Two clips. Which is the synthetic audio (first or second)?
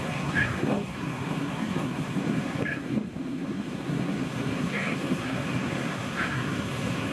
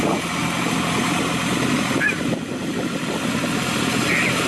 first